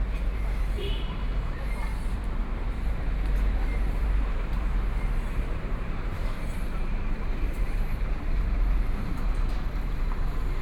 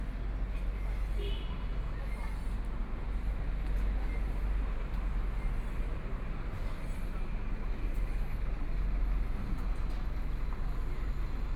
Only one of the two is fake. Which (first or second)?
first